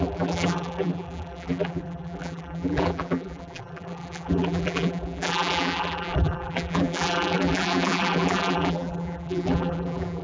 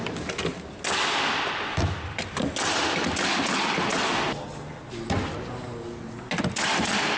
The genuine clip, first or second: second